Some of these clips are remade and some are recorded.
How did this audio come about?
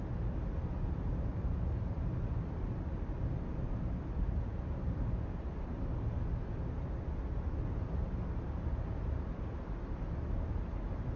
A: recorded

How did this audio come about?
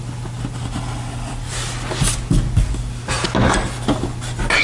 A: recorded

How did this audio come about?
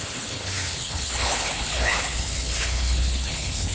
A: remade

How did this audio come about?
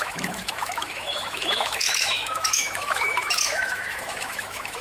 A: remade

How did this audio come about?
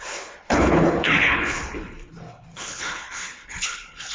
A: remade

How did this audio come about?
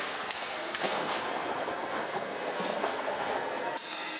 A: remade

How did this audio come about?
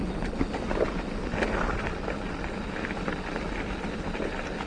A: recorded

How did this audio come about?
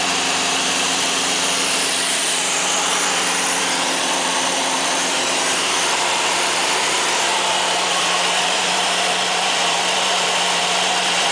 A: remade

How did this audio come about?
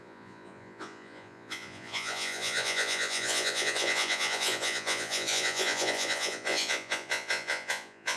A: remade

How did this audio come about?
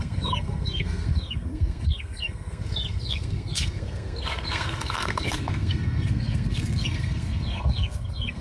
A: remade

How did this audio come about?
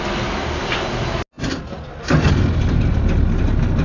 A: recorded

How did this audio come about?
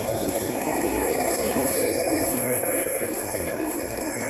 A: remade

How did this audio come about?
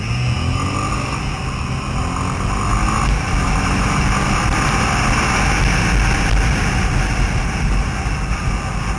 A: recorded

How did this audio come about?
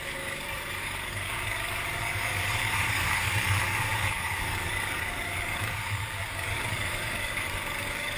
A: remade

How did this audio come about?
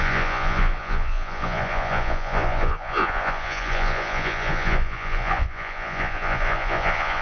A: remade